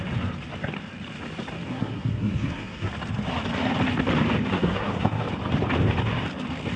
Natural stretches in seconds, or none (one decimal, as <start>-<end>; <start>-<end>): 0.0-1.7; 2.9-4.5; 5.3-6.8